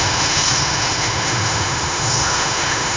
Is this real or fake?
fake